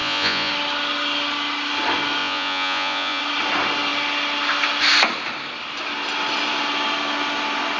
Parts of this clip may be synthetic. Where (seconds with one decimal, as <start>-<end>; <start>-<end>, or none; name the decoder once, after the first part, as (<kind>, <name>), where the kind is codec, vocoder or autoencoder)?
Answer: 0.0-0.5 (vocoder, Vocos); 2.2-3.2